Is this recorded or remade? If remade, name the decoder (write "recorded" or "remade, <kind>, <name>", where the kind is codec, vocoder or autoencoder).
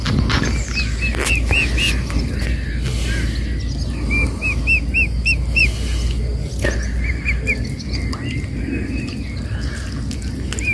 recorded